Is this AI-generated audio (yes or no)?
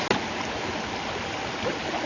no